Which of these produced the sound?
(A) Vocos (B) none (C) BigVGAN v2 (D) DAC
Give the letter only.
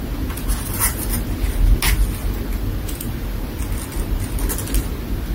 B